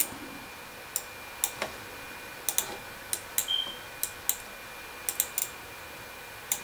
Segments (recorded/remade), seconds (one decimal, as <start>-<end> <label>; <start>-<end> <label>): 0.0-5.4 recorded; 5.4-6.6 remade